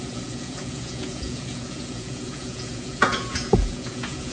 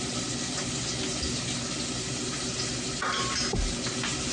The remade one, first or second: first